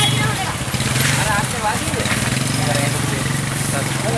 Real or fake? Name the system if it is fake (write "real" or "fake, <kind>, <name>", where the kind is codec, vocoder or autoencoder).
real